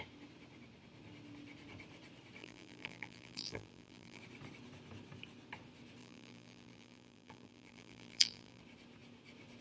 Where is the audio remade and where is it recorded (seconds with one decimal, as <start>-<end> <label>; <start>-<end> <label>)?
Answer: 0.0-2.4 recorded; 2.4-4.2 remade; 4.2-6.0 recorded; 6.0-8.6 remade; 8.6-9.6 recorded